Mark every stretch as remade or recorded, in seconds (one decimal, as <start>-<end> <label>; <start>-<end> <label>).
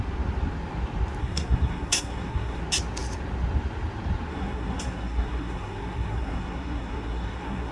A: 0.0-1.2 recorded; 1.2-2.6 remade; 2.6-4.3 recorded; 4.3-7.7 remade